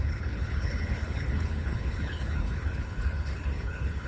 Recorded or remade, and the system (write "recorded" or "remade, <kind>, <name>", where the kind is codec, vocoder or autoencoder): remade, codec, HILCodec